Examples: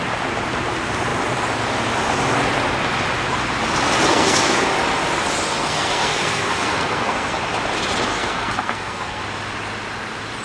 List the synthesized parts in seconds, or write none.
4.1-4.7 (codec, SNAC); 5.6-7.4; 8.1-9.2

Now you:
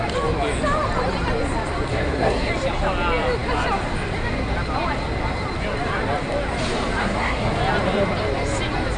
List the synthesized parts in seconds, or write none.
1.9-2.5 (codec, SNAC); 7.0-7.5

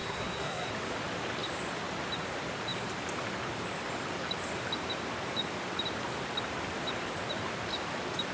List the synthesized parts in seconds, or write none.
0.0-0.7 (codec, SNAC)

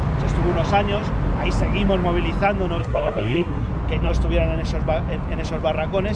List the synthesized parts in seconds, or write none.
2.8-3.7 (codec, SNAC)

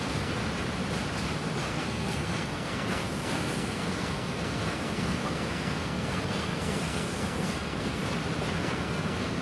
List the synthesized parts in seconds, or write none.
0.0-0.4 (codec, SNAC); 1.6-8.0; 8.5-9.4

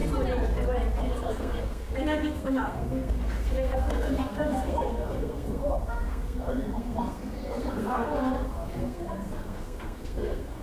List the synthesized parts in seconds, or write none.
1.0-10.6 (codec, SNAC)

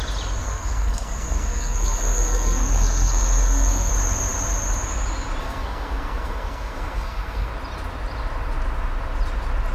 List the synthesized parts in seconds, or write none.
0.4-3.9 (codec, SNAC); 5.4-7.5